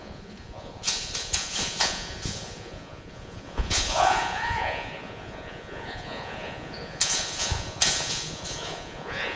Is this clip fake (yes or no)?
yes